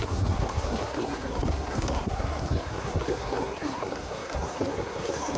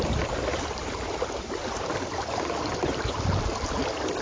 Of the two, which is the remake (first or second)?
first